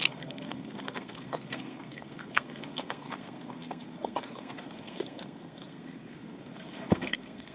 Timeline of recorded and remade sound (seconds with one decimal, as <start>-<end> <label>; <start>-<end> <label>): 0.0-7.5 remade